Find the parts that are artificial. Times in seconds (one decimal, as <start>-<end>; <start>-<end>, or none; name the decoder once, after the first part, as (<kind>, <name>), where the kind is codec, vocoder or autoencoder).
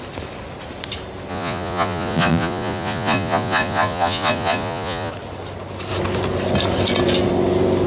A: 1.3-5.1 (vocoder, Vocos)